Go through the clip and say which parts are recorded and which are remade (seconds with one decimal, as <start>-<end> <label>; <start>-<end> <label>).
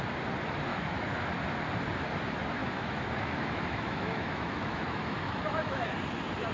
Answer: 0.0-0.7 recorded; 0.7-1.3 remade; 1.3-2.6 recorded; 2.6-5.9 remade; 5.9-6.5 recorded